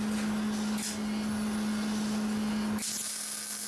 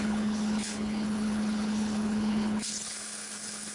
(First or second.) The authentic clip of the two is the first